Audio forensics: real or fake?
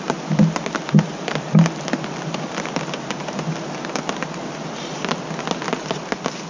real